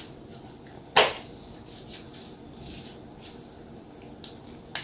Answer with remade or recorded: recorded